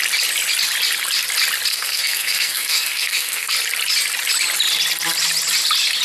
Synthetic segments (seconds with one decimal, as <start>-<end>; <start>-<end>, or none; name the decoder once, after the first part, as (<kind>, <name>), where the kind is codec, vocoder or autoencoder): 1.7-3.5 (codec, SNAC)